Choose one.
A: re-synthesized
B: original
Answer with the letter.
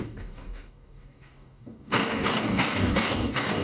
A